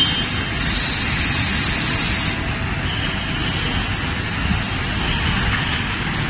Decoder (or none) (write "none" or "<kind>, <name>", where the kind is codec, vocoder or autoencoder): none